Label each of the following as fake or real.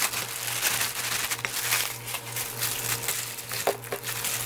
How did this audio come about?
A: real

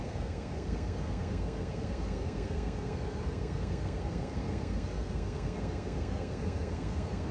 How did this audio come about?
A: fake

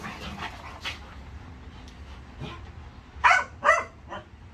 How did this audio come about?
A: real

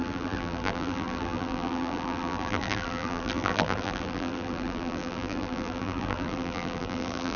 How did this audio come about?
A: fake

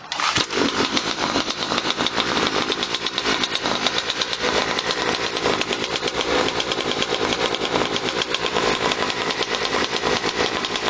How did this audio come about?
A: fake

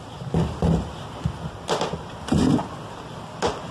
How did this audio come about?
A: real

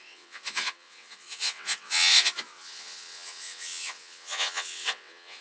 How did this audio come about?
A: fake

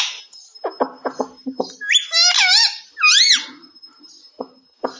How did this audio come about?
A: real